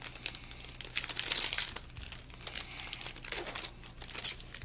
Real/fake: real